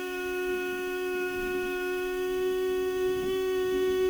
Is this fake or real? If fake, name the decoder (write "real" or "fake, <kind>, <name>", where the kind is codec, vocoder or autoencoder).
fake, autoencoder, DAC-VAE